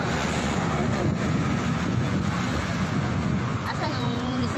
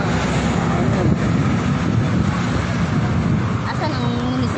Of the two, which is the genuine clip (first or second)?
second